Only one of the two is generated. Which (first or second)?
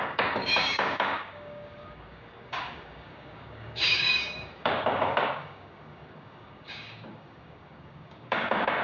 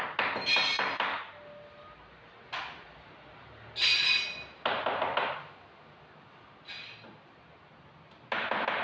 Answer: first